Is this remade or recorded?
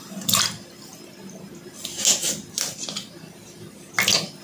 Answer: recorded